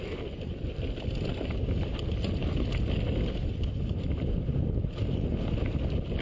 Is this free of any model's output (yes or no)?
yes